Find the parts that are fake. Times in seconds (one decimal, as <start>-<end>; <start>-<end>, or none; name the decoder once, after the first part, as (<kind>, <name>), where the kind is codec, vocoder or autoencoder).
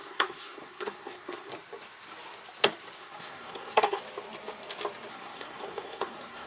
0.0-1.5 (codec, SNAC); 3.0-4.0; 5.1-6.5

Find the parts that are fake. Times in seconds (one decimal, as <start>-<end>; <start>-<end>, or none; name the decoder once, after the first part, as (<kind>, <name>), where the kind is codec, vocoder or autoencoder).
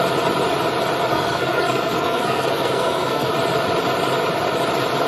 1.1-3.3 (codec, SNAC)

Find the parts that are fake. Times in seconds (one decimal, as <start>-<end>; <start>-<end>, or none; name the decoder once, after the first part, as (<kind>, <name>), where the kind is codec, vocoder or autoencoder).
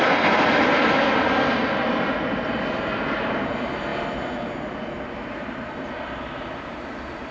none